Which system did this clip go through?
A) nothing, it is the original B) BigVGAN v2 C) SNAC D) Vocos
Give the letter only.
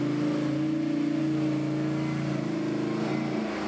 A